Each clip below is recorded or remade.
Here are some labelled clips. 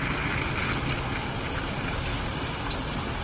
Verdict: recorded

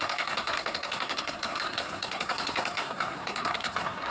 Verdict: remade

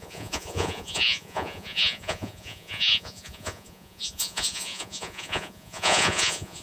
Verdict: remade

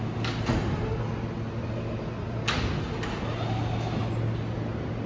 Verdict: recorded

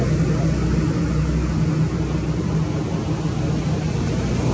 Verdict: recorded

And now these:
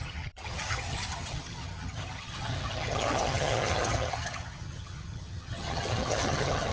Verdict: remade